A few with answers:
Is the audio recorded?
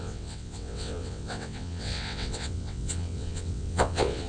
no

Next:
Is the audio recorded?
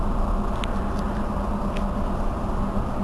yes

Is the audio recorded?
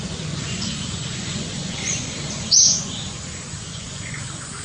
no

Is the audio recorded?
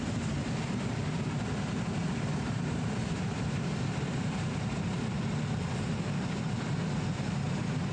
no